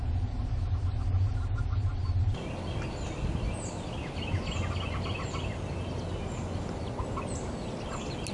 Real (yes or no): yes